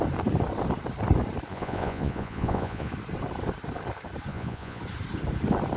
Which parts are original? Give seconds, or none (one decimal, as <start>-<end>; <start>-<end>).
0.0-1.5; 2.9-4.3; 4.8-5.8